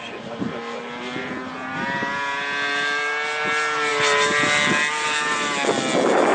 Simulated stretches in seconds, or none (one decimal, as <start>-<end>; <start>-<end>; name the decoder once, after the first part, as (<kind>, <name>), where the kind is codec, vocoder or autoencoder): none